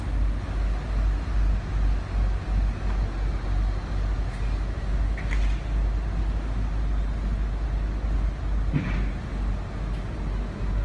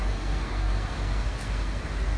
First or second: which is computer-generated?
second